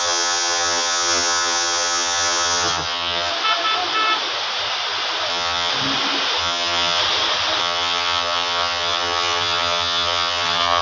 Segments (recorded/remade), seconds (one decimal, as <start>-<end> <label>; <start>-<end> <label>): 0.0-3.3 remade; 3.3-5.3 recorded; 5.3-5.7 remade; 5.7-6.4 recorded; 6.4-7.0 remade; 7.0-7.6 recorded; 7.6-10.8 remade